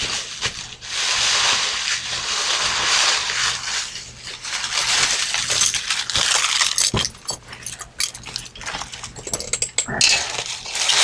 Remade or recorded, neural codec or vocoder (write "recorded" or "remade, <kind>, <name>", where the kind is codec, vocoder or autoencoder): recorded